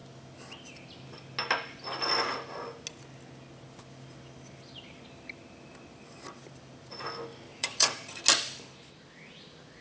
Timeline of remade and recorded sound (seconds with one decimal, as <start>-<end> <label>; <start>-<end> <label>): 0.0-7.5 recorded; 7.5-8.2 remade; 8.2-9.8 recorded